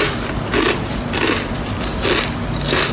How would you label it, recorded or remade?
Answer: recorded